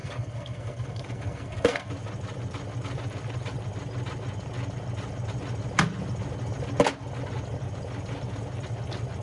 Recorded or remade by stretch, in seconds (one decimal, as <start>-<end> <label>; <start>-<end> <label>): 0.0-1.9 remade; 1.9-9.2 recorded